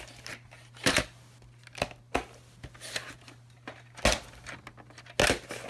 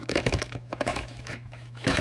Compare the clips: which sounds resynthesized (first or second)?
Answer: second